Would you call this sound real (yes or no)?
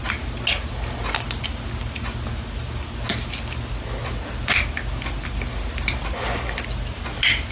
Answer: yes